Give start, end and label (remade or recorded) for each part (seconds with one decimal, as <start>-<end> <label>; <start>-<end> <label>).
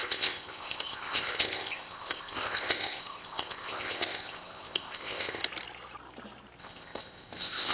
0.0-5.4 remade; 5.4-6.6 recorded; 6.6-7.7 remade